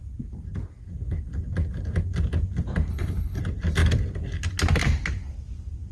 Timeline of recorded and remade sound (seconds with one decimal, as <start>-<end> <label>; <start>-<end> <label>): 0.0-2.9 recorded; 2.9-3.4 remade; 3.4-5.9 recorded